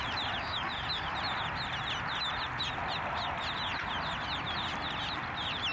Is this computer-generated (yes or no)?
no